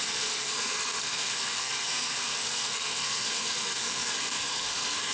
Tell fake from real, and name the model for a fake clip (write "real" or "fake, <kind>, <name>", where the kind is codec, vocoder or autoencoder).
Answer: fake, codec, SNAC